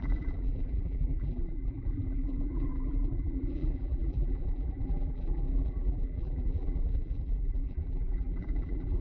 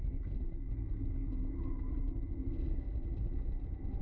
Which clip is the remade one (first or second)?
first